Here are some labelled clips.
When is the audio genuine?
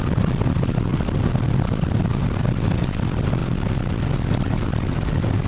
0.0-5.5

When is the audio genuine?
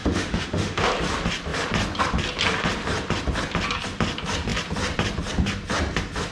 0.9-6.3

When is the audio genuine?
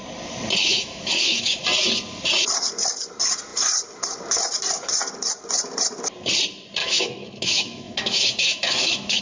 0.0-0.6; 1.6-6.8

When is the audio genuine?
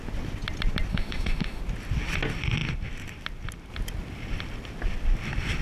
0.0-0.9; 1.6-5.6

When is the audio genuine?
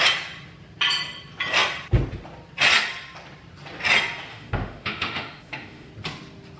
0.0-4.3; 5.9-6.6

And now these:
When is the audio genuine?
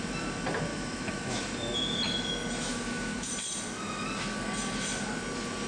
0.0-0.7; 1.4-2.7; 3.3-5.7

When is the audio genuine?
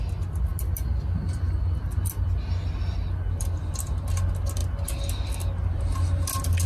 0.0-6.7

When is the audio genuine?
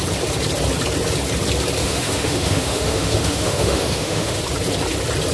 0.0-1.8; 4.4-5.3